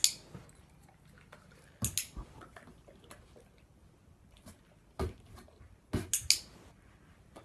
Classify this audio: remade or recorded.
recorded